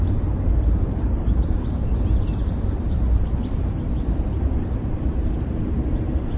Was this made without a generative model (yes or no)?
no